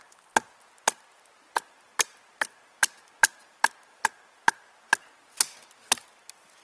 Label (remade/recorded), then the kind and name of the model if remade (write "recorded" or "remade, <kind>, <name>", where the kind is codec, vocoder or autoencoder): recorded